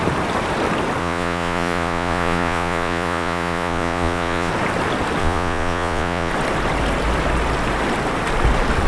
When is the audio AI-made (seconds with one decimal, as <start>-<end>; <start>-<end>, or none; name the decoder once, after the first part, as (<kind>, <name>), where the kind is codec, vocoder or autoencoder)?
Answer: 1.0-4.5 (vocoder, Vocos); 5.2-6.3